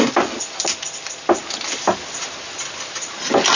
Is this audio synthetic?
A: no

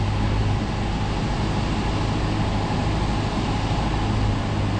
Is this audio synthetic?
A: no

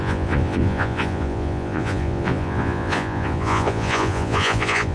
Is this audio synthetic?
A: yes